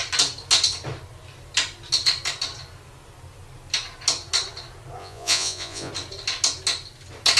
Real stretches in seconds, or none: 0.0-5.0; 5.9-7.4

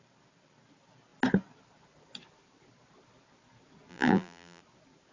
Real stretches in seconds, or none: 0.0-3.9; 4.6-5.1

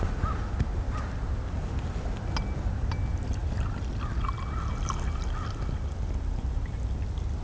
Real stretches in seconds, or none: 0.0-7.4

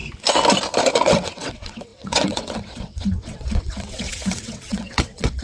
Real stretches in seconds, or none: 0.0-0.9

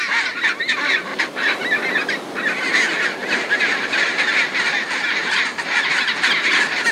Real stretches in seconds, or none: 0.0-1.1; 1.9-3.2; 4.2-5.2; 5.9-6.9